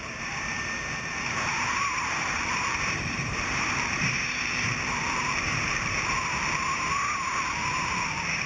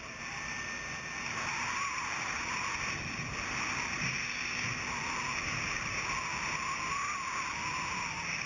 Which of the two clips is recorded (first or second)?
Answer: second